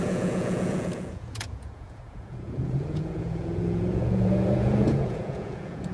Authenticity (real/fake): fake